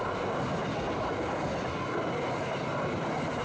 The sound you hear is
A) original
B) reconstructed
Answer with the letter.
A